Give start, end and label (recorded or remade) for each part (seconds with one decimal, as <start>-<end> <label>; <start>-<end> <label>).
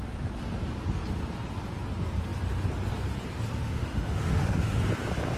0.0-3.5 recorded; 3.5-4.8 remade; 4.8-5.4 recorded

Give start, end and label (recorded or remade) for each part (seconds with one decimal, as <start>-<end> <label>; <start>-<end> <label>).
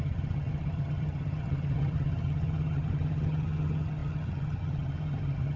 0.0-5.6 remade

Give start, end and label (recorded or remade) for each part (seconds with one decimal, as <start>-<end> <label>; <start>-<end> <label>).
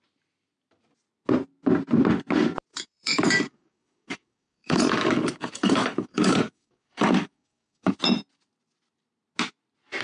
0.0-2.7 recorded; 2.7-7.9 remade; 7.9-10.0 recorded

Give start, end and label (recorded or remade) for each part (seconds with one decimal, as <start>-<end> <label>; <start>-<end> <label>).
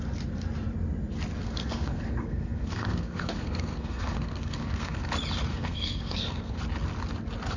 0.0-1.4 recorded; 1.4-5.1 remade; 5.1-5.5 recorded; 5.5-6.6 remade; 6.6-7.6 recorded